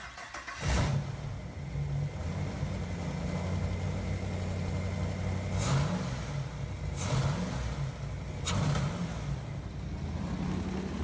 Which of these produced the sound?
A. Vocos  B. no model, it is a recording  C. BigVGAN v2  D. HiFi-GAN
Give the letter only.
B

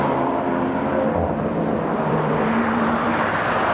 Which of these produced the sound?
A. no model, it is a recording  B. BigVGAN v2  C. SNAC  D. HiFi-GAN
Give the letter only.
B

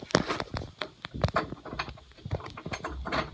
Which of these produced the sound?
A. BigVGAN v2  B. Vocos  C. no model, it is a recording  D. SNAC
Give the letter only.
C